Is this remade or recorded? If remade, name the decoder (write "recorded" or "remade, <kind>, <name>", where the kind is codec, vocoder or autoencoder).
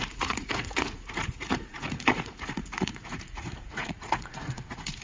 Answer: remade, vocoder, Vocos